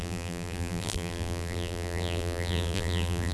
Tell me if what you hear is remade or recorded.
remade